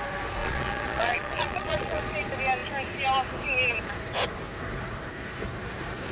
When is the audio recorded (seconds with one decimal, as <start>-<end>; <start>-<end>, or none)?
0.0-0.4; 2.0-6.1